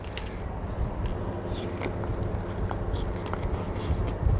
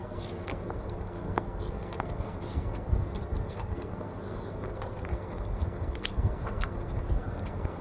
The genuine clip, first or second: first